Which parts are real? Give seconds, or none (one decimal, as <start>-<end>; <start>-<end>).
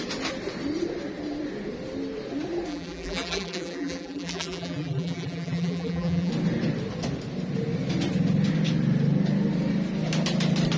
0.0-2.7; 6.3-10.8